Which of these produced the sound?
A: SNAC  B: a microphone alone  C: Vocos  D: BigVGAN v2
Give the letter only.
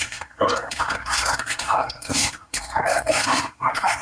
A